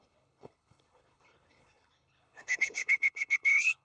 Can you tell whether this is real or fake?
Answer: fake